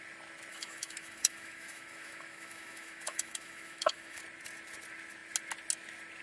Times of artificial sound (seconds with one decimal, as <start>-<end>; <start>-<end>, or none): 0.5-4.2